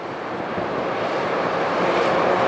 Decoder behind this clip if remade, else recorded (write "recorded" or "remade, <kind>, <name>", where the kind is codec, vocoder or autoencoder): remade, vocoder, BigVGAN v2